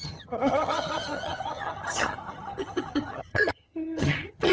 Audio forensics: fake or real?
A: fake